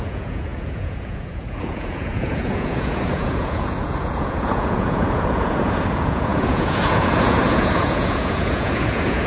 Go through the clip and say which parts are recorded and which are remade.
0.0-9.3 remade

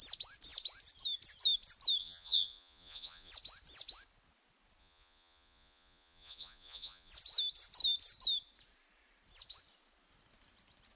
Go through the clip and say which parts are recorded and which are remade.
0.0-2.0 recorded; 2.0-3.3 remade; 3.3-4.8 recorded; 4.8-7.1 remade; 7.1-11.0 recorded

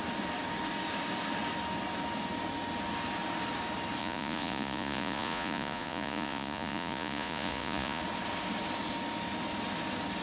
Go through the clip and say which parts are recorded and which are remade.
0.0-4.0 recorded; 4.0-8.0 remade; 8.0-10.2 recorded

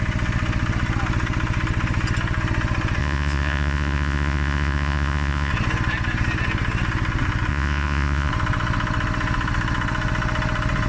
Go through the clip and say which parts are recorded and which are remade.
0.0-3.0 recorded; 3.0-5.5 remade; 5.5-7.5 recorded; 7.5-8.3 remade; 8.3-10.9 recorded